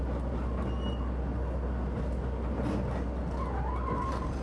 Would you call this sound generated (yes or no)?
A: no